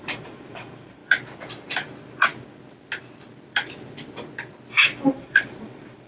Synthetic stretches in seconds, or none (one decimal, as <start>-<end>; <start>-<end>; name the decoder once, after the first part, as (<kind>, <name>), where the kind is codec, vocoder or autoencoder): 0.0-1.0 (vocoder, BigVGAN v2); 4.7-6.1